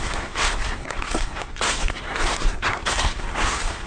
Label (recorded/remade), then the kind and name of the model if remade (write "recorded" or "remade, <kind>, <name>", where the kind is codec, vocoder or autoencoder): remade, codec, SNAC